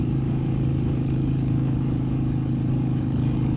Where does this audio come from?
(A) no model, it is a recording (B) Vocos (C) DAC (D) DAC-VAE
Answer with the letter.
C